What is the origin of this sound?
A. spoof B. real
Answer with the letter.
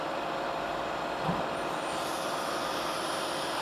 B